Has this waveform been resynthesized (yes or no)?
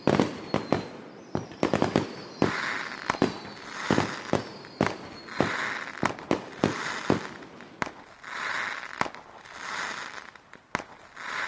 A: no